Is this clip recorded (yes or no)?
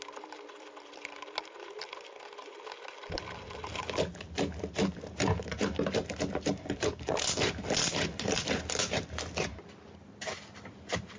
yes